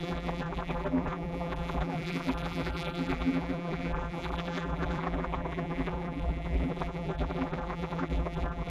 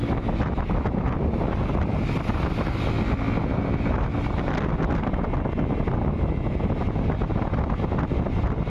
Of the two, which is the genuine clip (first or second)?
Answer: second